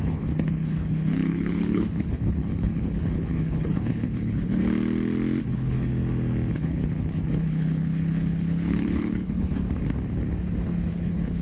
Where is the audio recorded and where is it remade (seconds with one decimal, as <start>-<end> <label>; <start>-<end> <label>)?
0.0-4.6 remade; 4.6-5.4 recorded; 5.4-5.9 remade; 5.9-6.5 recorded; 6.5-9.6 remade; 9.6-10.9 recorded; 10.9-11.4 remade